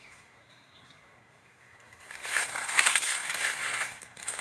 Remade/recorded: remade